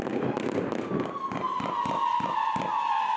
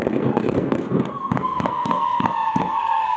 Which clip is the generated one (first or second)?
second